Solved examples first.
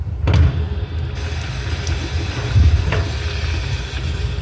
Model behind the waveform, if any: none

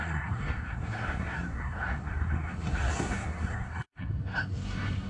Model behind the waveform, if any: codec, SNAC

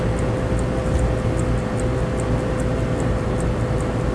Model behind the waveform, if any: none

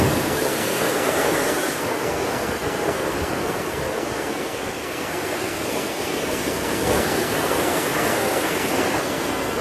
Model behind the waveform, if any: codec, SNAC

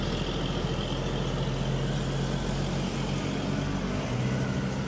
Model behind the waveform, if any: none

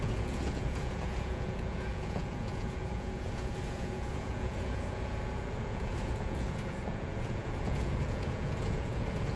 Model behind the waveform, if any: vocoder, Vocos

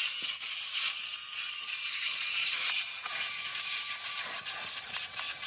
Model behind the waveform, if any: none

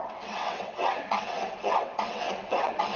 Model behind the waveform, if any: vocoder, WaveNeXt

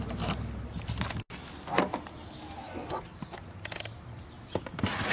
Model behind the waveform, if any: none